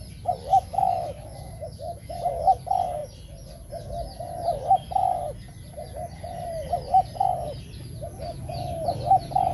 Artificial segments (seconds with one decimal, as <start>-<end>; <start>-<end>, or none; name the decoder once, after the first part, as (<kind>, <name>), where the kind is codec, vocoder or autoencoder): 0.4-2.5 (autoencoder, DAC-VAE)